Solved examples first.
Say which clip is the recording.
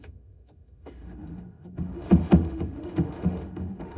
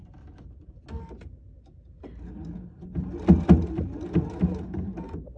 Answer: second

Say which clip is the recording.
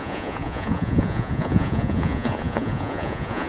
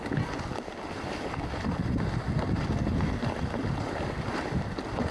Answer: second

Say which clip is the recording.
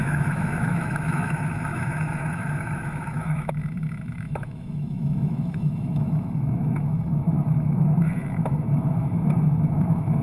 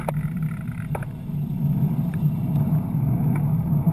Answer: second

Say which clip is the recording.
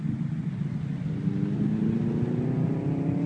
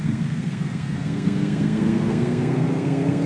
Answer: first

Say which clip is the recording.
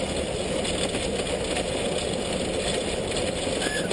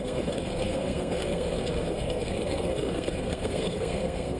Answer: first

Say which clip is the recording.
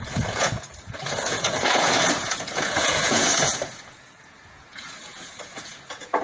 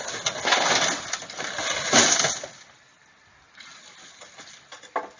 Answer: second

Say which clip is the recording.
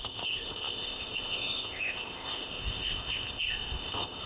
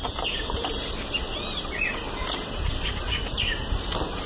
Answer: second